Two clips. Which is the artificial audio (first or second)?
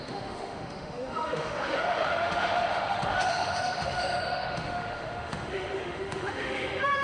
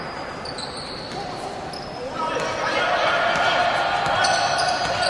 first